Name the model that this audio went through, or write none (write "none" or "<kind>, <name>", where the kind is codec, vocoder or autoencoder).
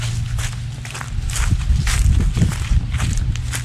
none